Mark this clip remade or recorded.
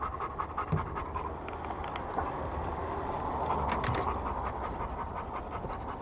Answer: recorded